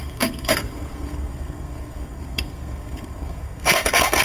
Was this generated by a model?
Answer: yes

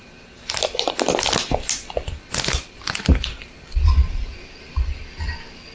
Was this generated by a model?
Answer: no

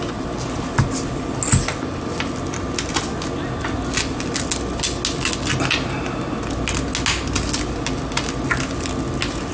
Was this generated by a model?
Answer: no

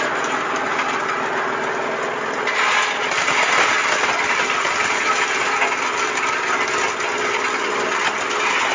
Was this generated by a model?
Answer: no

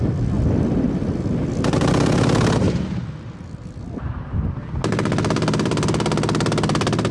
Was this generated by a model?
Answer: no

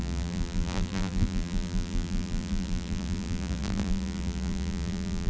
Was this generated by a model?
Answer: yes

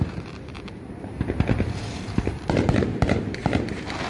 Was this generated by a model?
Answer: yes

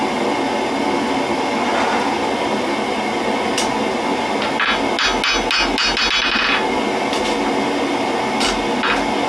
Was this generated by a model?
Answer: no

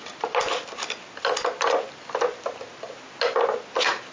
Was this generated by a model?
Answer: no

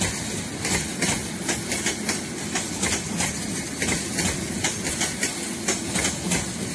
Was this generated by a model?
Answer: no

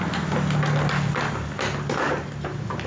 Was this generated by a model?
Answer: no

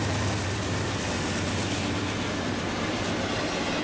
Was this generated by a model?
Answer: no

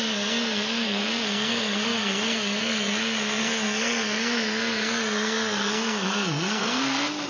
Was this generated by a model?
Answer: yes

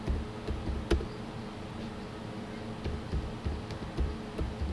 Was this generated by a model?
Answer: no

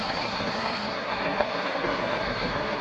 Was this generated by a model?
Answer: yes